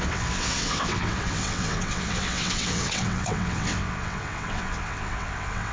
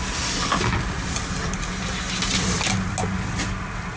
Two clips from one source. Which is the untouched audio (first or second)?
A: second